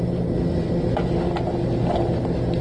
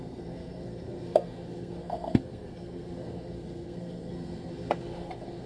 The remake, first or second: second